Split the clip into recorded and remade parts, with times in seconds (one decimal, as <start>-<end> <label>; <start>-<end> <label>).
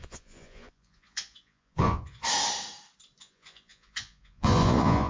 0.0-2.2 remade; 2.2-3.2 recorded; 3.2-5.1 remade